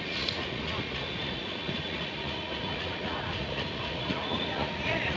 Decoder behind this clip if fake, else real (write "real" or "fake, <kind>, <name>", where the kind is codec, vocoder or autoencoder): fake, vocoder, Vocos